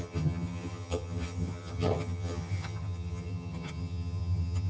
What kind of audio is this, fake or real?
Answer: fake